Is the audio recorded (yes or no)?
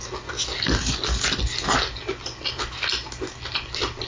yes